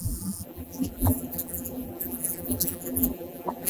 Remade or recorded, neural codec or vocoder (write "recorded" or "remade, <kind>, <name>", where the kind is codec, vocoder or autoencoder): remade, vocoder, BigVGAN v2